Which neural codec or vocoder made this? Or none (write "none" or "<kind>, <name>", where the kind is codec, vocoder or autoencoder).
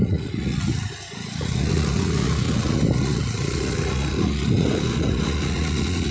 vocoder, Vocos